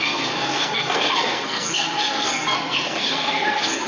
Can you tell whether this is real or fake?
fake